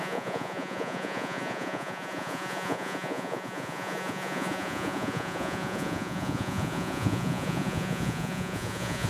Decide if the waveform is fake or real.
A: fake